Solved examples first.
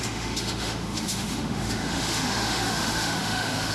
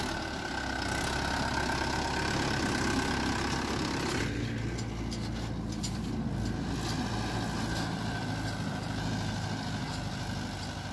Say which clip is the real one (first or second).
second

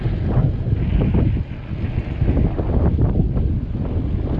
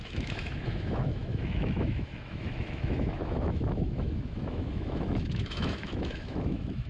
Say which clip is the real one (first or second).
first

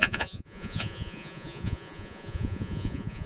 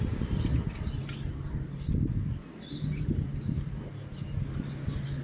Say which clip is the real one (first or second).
second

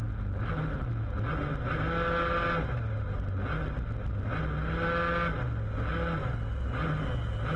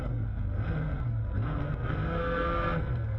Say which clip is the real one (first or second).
first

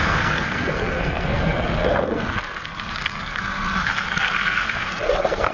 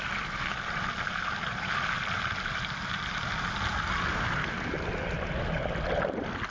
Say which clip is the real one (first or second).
second